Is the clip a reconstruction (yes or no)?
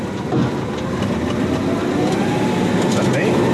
no